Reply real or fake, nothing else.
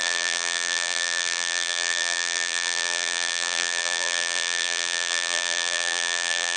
fake